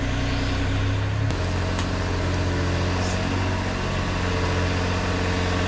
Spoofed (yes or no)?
no